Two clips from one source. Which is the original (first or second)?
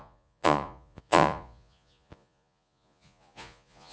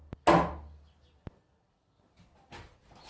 second